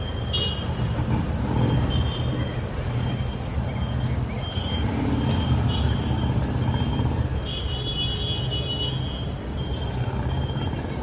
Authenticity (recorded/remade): recorded